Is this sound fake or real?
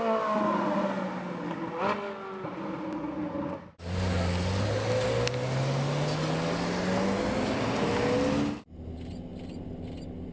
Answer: real